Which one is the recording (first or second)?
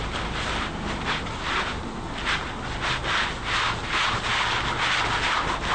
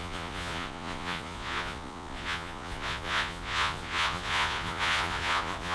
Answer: first